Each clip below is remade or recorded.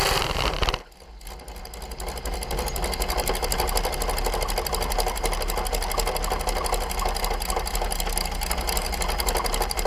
recorded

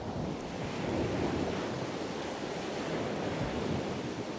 recorded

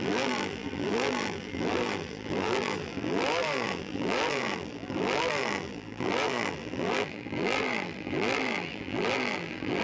remade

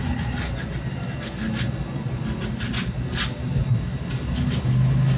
recorded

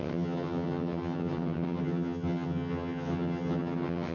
remade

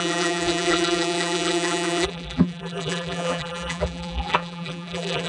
remade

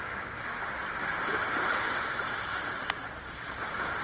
recorded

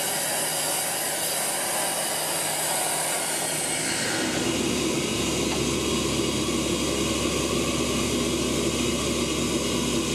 recorded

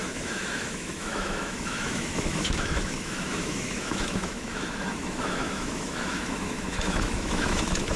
remade